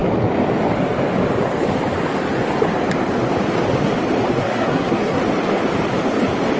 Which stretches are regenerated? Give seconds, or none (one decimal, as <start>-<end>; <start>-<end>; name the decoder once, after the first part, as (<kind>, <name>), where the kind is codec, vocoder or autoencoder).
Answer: 4.3-5.2 (codec, SNAC)